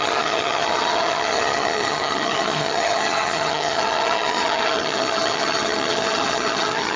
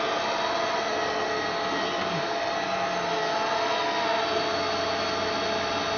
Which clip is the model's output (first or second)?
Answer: first